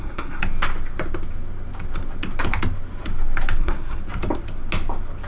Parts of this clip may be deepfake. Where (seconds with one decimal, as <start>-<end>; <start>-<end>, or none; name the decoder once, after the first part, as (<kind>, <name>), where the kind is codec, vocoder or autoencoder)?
0.0-0.4 (codec, SNAC); 3.6-4.0